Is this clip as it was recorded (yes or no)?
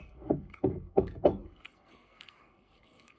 no